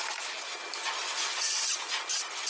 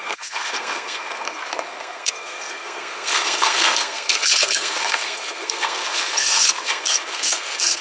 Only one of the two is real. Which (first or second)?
first